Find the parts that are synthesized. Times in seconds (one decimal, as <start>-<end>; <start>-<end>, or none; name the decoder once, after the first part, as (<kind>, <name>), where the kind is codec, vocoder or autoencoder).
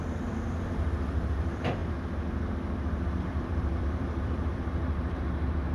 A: 0.0-1.8 (vocoder, BigVGAN v2); 3.1-5.7